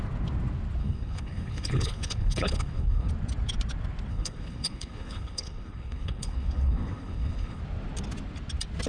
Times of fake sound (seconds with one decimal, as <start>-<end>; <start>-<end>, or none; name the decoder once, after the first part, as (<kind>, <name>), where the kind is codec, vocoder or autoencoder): 0.8-3.1 (codec, HILCodec); 4.1-7.6